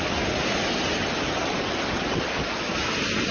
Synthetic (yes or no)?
no